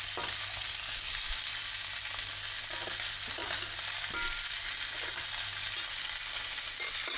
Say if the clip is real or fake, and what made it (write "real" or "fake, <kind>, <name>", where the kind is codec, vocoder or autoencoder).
real